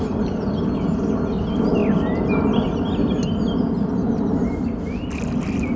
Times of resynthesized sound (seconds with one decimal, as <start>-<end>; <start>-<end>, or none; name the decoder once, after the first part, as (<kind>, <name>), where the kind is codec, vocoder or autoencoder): none